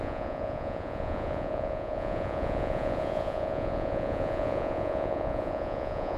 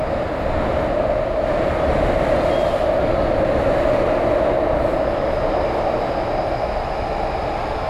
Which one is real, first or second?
second